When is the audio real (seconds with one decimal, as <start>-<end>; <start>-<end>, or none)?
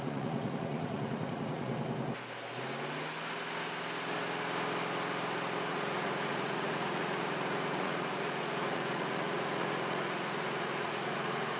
1.7-5.7